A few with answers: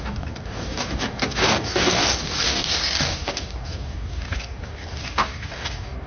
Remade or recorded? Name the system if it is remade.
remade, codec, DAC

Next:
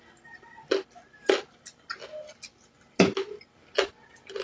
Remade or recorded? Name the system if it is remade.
recorded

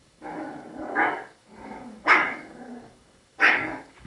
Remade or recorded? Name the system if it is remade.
remade, codec, DAC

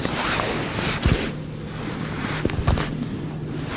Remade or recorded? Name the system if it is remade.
recorded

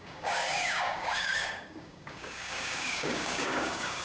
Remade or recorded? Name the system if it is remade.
remade, codec, DAC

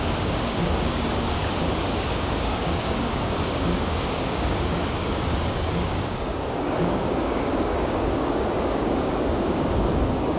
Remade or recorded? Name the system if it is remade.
remade, codec, DAC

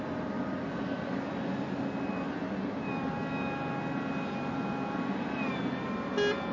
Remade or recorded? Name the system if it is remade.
recorded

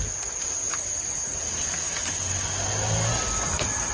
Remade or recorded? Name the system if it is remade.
recorded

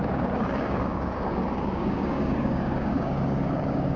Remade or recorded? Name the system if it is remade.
remade, codec, DAC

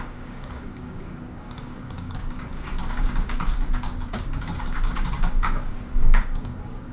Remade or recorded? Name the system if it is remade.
remade, codec, DAC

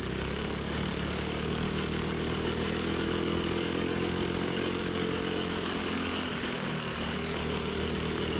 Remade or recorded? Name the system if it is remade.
remade, codec, DAC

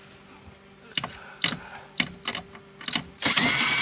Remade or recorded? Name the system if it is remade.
recorded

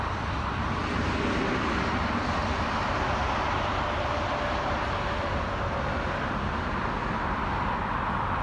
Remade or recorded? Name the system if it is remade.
recorded